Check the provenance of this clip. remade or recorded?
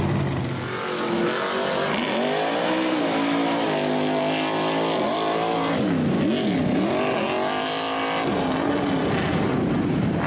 recorded